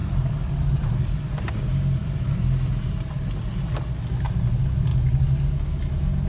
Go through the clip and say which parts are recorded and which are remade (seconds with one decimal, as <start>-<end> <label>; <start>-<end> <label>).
0.0-1.5 remade; 1.5-2.0 recorded; 2.0-2.7 remade; 2.7-6.3 recorded